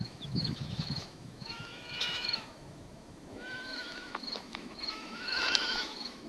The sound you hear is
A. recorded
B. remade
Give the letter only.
B